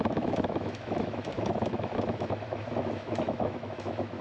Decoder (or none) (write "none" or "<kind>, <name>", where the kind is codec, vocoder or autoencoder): autoencoder, DAC-VAE